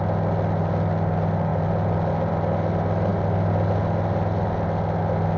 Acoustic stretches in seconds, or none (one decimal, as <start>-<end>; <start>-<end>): 0.0-5.4